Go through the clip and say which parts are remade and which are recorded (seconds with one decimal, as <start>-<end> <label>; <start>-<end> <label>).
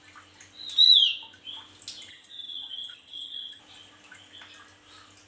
0.0-2.1 recorded; 2.1-3.6 remade; 3.6-5.3 recorded